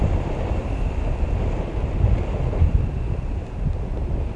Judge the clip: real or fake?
real